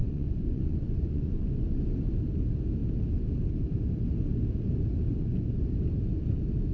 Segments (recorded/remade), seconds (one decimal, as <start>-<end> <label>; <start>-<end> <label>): 0.0-1.8 remade; 1.8-6.7 recorded